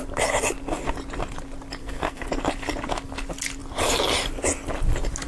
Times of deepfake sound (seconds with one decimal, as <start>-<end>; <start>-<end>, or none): 1.8-2.4